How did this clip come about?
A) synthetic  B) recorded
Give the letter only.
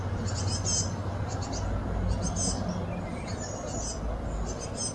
B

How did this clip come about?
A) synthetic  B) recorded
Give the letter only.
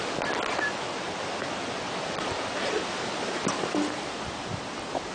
B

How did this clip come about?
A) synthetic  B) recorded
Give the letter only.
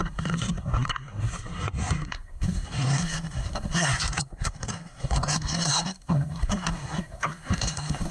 A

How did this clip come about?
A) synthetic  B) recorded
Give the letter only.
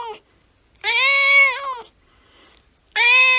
B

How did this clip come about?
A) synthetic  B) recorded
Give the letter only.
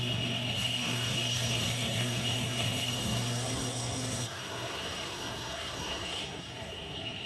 A